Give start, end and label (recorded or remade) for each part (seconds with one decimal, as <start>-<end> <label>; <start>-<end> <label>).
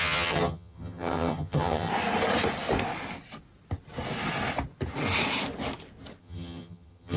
0.0-1.9 remade; 1.9-6.2 recorded; 6.2-7.2 remade